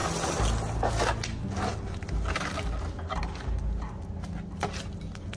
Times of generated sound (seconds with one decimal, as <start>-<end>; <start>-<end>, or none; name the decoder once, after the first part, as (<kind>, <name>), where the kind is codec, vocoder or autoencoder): none